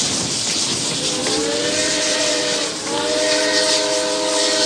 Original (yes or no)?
yes